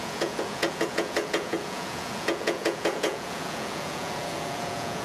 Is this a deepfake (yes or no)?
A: yes